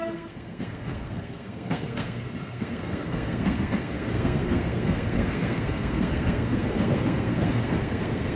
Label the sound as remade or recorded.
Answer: remade